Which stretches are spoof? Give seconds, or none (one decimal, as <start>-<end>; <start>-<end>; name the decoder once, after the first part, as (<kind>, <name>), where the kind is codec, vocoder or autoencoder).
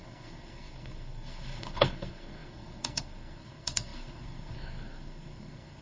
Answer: 0.0-5.8 (codec, SNAC)